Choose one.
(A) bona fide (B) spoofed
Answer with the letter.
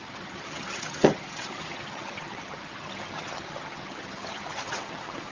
B